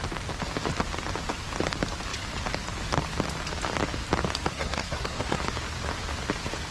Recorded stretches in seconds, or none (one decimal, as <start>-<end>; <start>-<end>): 0.0-4.5; 5.4-6.7